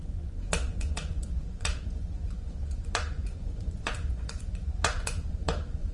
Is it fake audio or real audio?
fake